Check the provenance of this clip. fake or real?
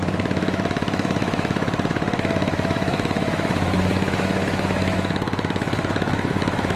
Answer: fake